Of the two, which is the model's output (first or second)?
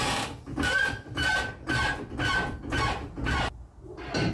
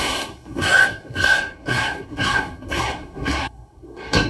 second